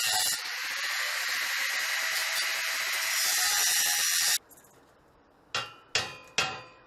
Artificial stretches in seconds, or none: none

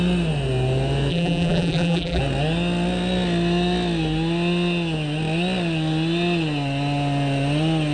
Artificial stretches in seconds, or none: 1.1-2.2 (vocoder, BigVGAN v2)

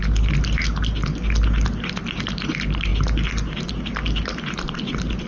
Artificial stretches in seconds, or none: none